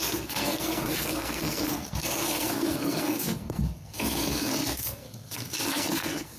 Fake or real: fake